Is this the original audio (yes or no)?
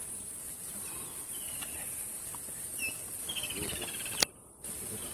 yes